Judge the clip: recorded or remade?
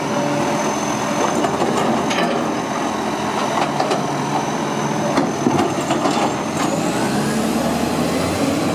recorded